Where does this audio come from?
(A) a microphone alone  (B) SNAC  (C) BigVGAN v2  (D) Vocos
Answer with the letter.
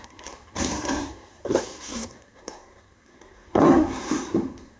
B